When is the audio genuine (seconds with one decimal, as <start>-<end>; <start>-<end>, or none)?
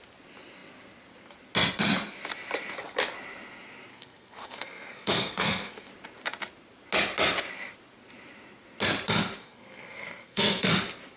0.0-3.9; 5.9-9.4; 10.7-11.2